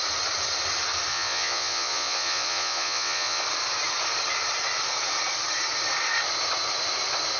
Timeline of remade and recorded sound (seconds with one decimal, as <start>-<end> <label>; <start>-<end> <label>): 0.0-1.1 recorded; 1.1-3.4 remade; 3.4-7.4 recorded